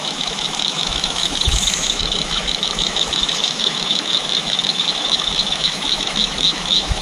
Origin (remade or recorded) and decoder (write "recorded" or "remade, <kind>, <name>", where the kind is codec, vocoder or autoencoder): remade, autoencoder, DAC-VAE